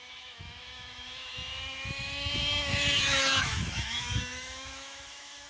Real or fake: fake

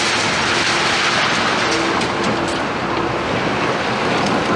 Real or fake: real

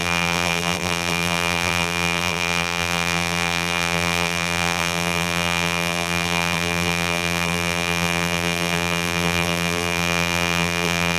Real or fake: fake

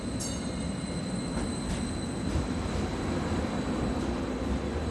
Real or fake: real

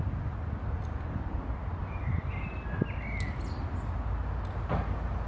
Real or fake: real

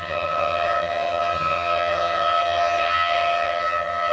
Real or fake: fake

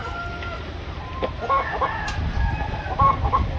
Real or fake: real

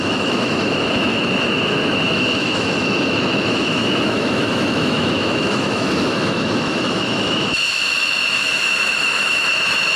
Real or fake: fake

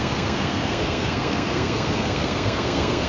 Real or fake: fake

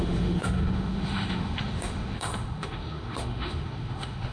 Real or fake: fake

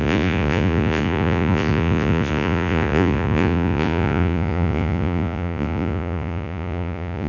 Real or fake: fake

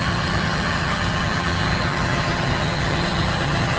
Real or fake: fake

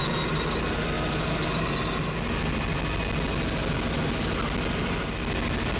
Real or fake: real